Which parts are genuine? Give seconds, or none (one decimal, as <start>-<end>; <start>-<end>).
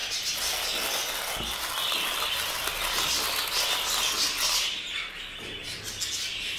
0.0-6.6